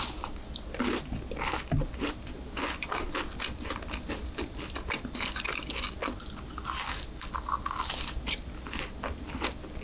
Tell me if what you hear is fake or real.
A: real